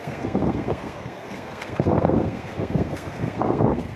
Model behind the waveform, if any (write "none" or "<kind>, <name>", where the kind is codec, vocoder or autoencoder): codec, SNAC